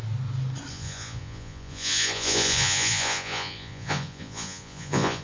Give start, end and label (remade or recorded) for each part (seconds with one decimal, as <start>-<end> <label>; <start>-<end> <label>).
0.0-0.7 recorded; 0.7-5.2 remade

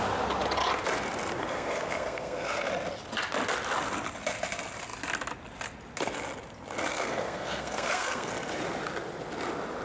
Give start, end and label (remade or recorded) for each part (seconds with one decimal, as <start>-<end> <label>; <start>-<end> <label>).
0.0-1.4 recorded; 1.4-2.7 remade; 2.7-6.9 recorded; 6.9-8.3 remade; 8.3-9.8 recorded

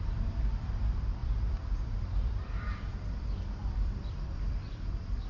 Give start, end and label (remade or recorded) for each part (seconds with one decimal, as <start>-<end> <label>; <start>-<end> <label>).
0.0-5.3 remade